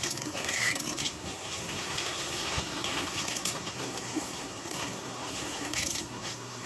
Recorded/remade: remade